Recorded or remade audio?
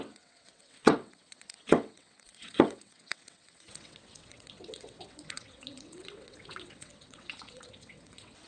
remade